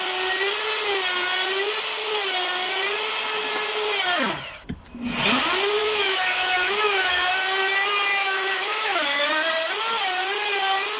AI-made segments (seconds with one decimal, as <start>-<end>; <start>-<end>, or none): 5.8-7.3; 8.1-9.3

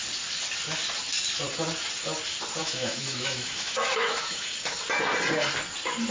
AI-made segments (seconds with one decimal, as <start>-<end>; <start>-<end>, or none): 2.6-4.5

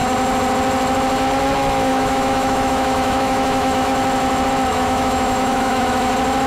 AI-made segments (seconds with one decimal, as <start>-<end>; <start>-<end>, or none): 1.9-3.9; 4.7-6.1